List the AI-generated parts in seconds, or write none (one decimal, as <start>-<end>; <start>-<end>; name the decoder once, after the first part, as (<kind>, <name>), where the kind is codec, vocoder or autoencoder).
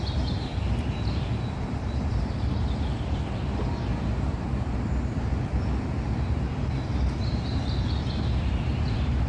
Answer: 0.0-0.5 (vocoder, BigVGAN v2); 1.5-5.3; 6.0-7.6; 8.1-9.3